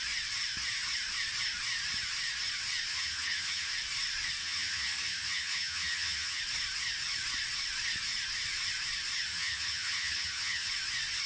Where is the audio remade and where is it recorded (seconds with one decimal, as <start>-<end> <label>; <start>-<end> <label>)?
0.0-2.9 recorded; 2.9-3.7 remade; 3.7-4.4 recorded; 4.4-6.4 remade; 6.4-9.3 recorded; 9.3-10.7 remade; 10.7-11.3 recorded